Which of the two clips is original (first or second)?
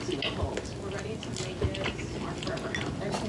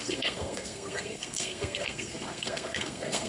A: first